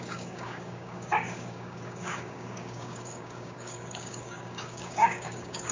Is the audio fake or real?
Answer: fake